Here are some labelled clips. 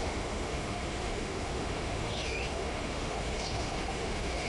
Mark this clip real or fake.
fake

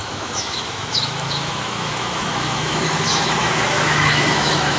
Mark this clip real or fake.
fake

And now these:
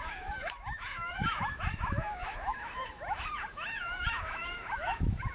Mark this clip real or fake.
fake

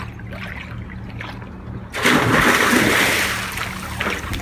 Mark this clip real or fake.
real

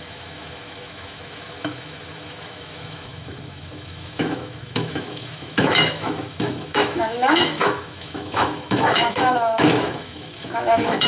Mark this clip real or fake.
fake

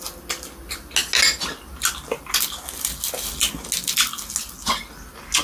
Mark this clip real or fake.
real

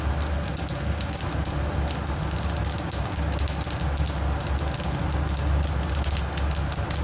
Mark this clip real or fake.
real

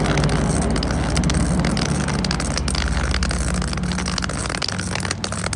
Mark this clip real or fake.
real